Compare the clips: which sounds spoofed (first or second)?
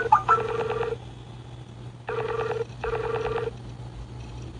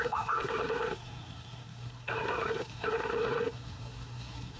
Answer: second